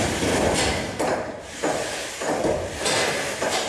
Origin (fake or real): fake